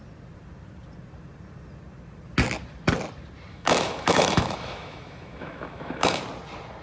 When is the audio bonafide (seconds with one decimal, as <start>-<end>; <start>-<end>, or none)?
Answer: 0.0-3.5; 6.2-6.8